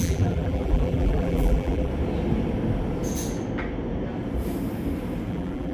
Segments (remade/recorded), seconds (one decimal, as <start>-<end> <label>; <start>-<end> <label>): 0.0-1.9 remade; 1.9-5.3 recorded; 5.3-5.7 remade